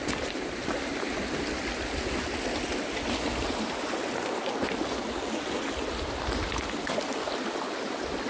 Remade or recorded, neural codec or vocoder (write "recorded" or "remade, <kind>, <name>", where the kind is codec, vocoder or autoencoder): recorded